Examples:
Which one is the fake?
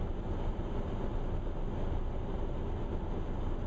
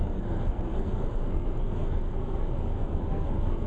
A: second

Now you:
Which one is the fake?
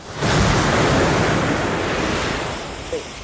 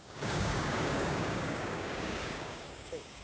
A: second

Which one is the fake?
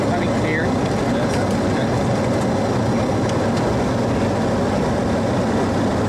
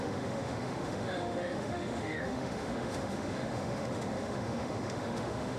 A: second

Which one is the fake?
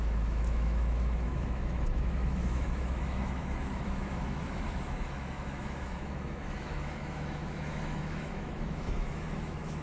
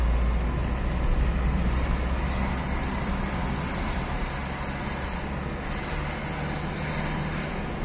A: first